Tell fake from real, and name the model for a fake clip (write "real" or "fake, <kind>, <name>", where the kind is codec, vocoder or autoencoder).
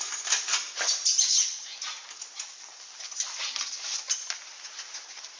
real